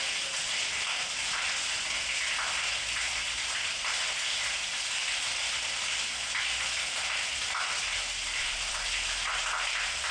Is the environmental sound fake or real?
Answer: real